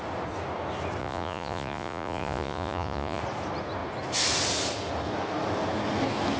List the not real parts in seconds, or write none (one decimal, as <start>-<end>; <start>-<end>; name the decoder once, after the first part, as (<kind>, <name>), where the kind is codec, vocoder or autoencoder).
1.0-3.2 (vocoder, Vocos)